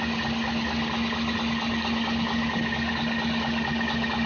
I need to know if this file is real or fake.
real